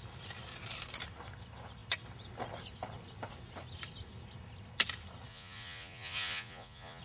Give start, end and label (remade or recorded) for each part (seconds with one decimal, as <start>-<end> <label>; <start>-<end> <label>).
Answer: 0.0-5.3 recorded; 5.3-7.0 remade